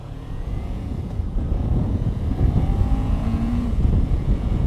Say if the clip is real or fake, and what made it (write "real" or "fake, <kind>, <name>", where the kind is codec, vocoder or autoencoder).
fake, vocoder, Vocos